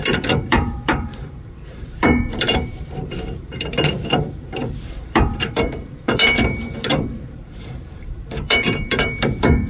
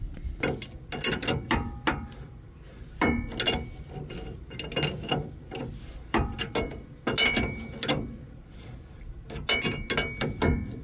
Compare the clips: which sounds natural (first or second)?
second